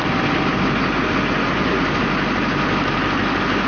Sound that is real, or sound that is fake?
real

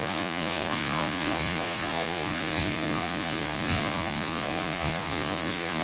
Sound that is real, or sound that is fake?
fake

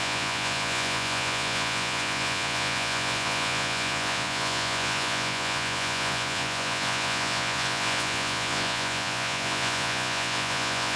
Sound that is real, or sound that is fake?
fake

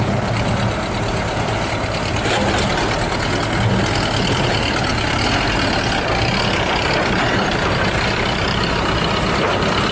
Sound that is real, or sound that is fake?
real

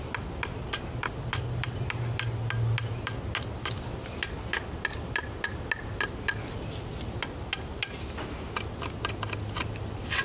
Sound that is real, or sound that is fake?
real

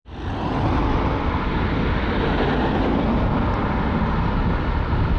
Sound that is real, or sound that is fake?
real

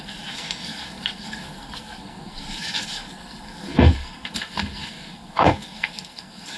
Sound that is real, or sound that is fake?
fake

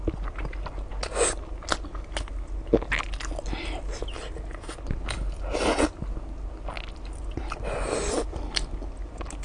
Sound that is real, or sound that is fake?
real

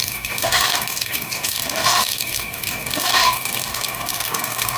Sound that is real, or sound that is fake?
fake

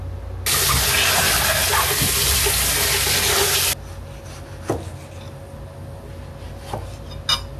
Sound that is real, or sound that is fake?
real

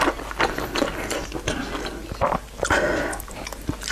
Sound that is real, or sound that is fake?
real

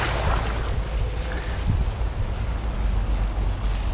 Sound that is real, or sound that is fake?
real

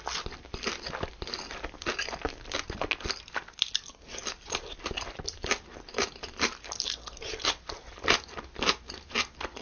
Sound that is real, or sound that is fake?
real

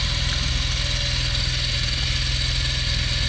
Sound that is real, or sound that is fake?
real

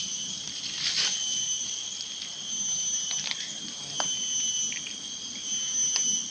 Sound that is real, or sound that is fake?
real